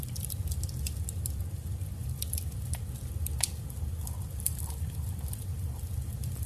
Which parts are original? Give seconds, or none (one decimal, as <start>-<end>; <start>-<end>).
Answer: 0.0-6.5